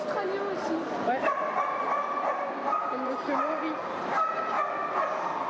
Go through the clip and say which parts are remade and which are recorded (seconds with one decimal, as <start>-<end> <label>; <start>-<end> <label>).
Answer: 0.0-1.1 recorded; 1.1-4.4 remade; 4.4-5.5 recorded